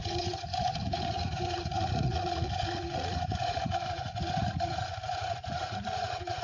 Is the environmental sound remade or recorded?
remade